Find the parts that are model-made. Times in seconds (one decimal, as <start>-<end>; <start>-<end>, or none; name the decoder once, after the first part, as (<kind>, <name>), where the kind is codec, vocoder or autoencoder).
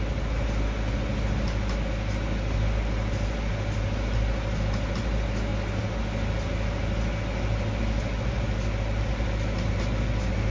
none